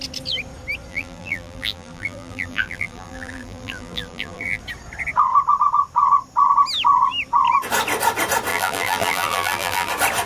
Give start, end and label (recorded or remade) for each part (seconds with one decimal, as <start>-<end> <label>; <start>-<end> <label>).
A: 0.0-0.9 recorded; 0.9-4.6 remade; 4.6-8.5 recorded; 8.5-9.9 remade; 9.9-10.3 recorded